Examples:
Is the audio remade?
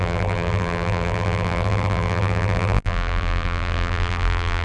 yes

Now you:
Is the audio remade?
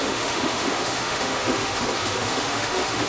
yes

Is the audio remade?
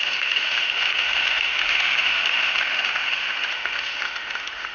yes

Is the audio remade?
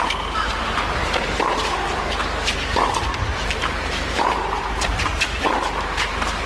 yes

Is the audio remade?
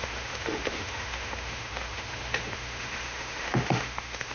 yes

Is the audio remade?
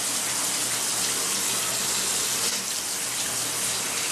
no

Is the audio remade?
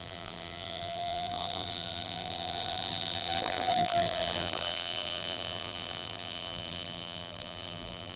yes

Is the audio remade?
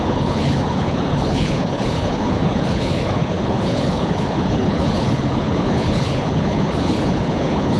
yes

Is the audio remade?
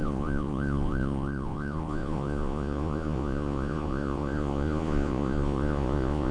yes